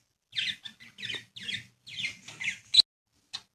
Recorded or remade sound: recorded